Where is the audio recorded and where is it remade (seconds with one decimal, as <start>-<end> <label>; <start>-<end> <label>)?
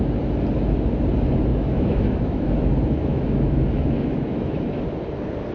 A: 0.0-1.5 recorded; 1.5-4.8 remade; 4.8-5.5 recorded